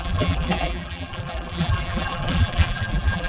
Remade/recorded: remade